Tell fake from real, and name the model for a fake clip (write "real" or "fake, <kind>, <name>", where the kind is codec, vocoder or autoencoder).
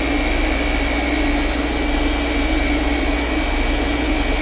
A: real